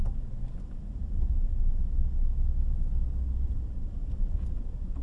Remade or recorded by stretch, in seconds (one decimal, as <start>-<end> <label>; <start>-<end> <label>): 0.0-5.0 recorded